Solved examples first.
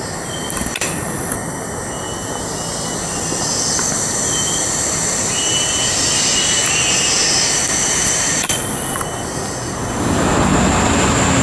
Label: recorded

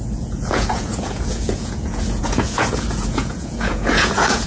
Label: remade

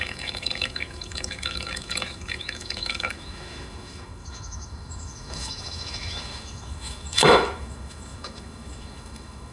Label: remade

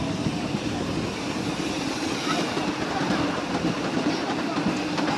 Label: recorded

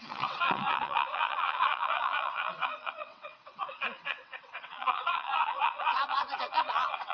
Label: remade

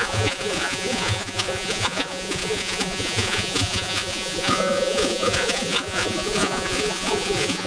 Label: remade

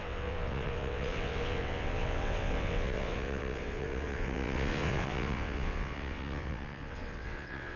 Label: remade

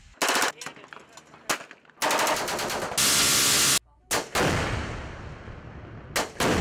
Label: recorded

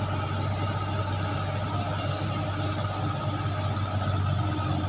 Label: recorded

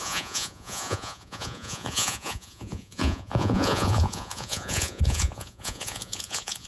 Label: remade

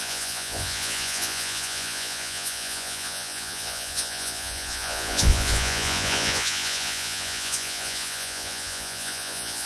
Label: remade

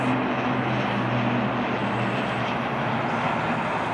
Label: recorded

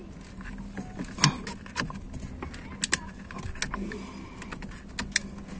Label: recorded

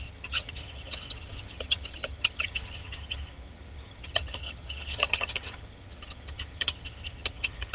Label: remade